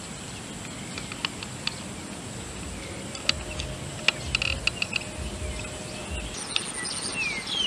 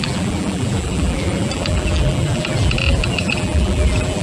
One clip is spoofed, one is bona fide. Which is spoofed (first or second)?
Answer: second